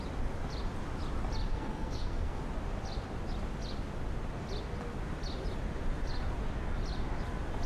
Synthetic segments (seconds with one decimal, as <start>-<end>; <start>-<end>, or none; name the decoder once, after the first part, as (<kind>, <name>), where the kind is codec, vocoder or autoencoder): 1.5-2.4 (codec, SNAC)